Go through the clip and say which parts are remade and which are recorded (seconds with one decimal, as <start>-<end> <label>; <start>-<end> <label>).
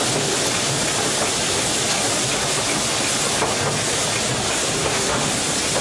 0.0-4.8 recorded; 4.8-5.3 remade; 5.3-5.8 recorded